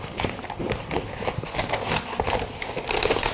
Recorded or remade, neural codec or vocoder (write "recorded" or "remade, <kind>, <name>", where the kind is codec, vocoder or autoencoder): recorded